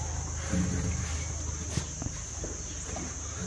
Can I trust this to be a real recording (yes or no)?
yes